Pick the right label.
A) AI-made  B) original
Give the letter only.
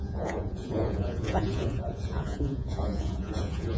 A